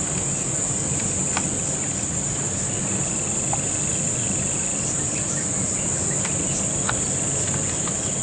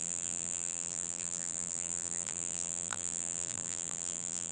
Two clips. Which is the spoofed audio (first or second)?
second